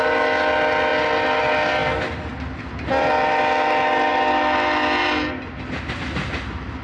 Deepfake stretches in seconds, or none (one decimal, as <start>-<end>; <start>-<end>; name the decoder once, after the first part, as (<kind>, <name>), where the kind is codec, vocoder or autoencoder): none